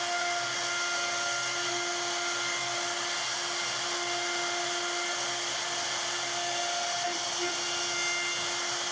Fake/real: real